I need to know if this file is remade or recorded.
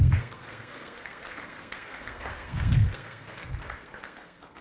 remade